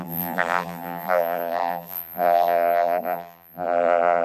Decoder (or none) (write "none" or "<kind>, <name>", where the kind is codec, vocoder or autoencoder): vocoder, BigVGAN v2